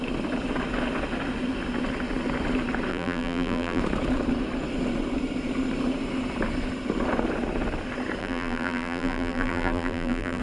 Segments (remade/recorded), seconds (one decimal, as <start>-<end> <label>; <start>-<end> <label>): 0.0-2.9 recorded; 2.9-3.8 remade; 3.8-8.2 recorded; 8.2-10.4 remade

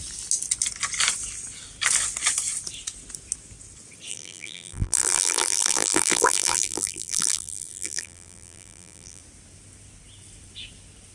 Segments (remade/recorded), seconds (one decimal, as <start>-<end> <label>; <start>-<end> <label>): 0.0-4.1 recorded; 4.1-9.2 remade; 9.2-11.1 recorded

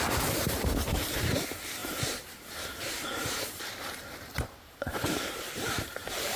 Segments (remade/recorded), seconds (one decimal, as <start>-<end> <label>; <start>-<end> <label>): 0.0-6.4 remade

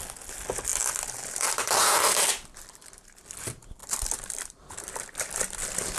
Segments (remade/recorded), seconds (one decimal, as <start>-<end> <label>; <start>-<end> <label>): 0.0-0.7 recorded; 0.7-2.3 remade; 2.3-3.8 recorded; 3.8-6.0 remade

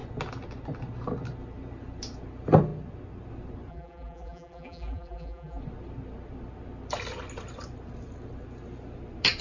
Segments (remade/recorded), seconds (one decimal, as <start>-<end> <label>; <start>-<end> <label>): 0.0-3.7 recorded; 3.7-5.6 remade; 5.6-9.4 recorded

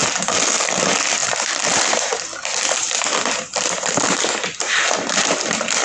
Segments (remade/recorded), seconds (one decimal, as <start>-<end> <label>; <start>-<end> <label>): 0.0-0.6 recorded; 0.6-5.8 remade

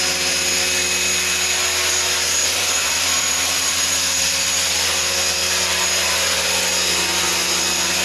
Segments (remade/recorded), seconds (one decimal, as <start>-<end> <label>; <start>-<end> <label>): 0.0-2.4 recorded; 2.4-4.5 remade; 4.5-8.0 recorded